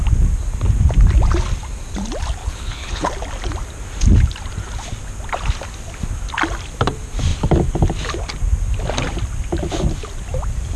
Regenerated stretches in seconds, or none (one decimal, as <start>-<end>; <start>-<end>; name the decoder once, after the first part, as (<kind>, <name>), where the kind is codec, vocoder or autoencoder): 2.4-3.1 (codec, HILCodec)